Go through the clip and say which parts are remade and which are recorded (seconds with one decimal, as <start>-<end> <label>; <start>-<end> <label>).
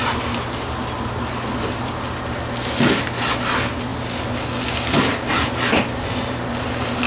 0.0-7.1 recorded